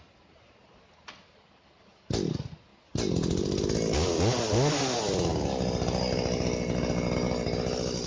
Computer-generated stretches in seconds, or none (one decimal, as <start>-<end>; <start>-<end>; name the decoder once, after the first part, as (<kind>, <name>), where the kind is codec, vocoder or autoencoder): none